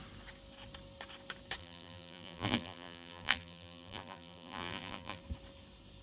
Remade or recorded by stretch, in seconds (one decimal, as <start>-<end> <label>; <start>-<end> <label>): 0.0-1.6 recorded; 1.6-5.2 remade; 5.2-6.0 recorded